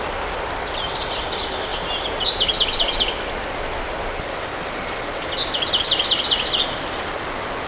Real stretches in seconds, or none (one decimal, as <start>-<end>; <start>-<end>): 0.0-7.7